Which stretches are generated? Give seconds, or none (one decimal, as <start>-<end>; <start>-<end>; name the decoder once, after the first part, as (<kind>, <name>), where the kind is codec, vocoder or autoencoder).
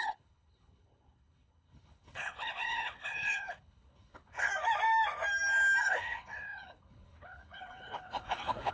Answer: 0.0-4.5 (codec, HILCodec); 5.8-8.7